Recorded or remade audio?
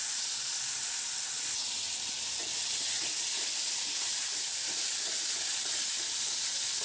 recorded